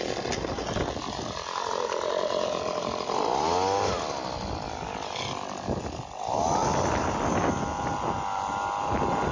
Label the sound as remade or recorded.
recorded